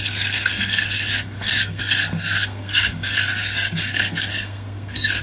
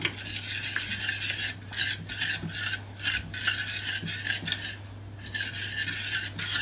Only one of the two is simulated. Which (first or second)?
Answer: first